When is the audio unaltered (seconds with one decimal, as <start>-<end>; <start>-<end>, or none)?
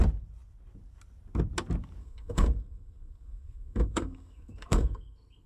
0.0-2.0